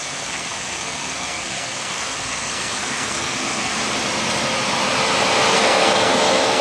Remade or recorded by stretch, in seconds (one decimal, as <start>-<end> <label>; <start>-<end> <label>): 0.0-3.7 remade; 3.7-5.5 recorded; 5.5-6.6 remade